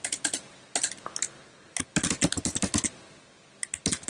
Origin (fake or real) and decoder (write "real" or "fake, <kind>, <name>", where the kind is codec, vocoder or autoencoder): real